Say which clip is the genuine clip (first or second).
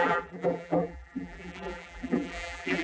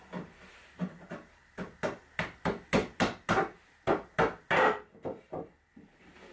second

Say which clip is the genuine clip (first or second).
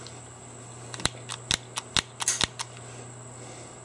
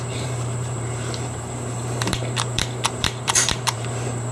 first